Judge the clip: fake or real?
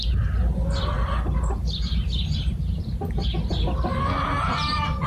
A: real